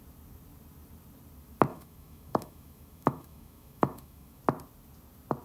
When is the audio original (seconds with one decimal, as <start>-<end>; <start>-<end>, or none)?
0.0-1.7; 4.4-5.4